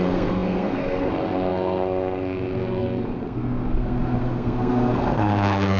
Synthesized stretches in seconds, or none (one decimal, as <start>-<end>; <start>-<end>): 0.0-5.8